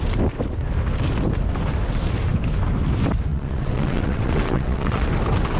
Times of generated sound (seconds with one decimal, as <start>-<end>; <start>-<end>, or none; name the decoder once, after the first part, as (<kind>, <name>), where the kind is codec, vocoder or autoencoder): 3.3-5.1 (vocoder, WaveNeXt)